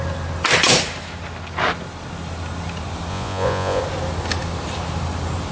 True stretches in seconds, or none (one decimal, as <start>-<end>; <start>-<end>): 0.0-3.1; 3.8-5.5